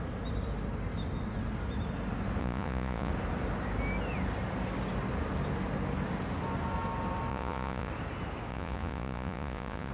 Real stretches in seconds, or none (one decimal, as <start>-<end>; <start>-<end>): 0.0-2.4; 3.1-7.3; 7.9-8.5